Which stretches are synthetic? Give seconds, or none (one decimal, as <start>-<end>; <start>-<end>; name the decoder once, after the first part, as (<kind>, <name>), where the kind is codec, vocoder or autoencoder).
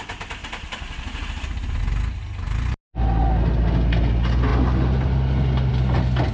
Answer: 0.4-1.8 (vocoder, BigVGAN v2)